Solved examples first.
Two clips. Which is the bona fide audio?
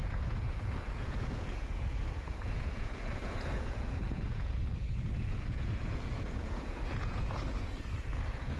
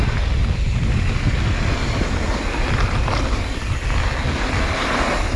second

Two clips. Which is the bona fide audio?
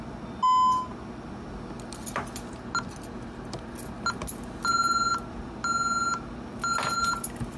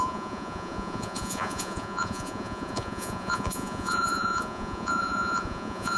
first